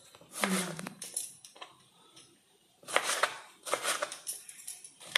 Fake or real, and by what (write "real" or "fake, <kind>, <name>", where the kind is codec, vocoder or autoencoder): fake, vocoder, BigVGAN v2